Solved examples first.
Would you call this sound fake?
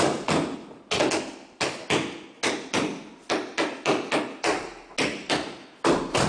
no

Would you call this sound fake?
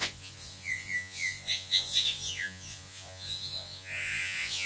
yes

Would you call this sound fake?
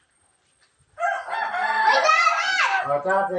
no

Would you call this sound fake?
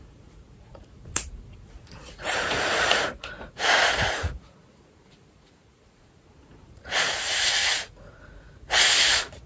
yes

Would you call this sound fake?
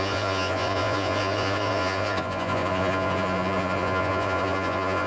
yes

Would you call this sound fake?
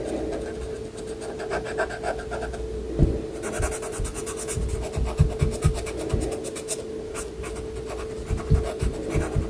no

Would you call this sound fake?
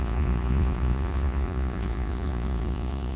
yes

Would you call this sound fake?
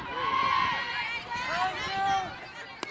no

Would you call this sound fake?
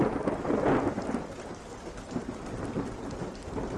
no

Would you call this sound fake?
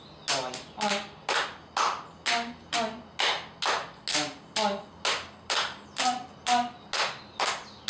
no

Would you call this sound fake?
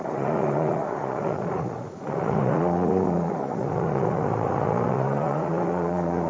yes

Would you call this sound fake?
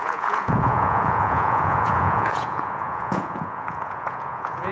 yes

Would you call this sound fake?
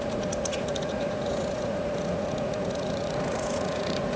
yes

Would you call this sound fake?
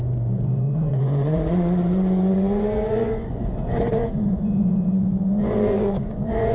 yes